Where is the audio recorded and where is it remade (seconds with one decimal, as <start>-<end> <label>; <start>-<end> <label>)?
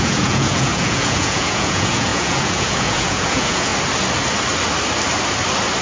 0.0-3.7 remade; 3.7-5.8 recorded